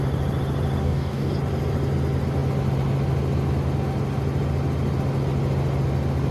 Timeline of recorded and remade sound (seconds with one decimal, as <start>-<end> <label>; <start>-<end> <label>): 0.0-0.8 recorded; 0.8-1.3 remade; 1.3-6.3 recorded